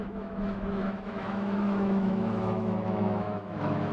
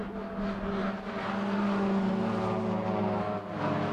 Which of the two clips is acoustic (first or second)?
second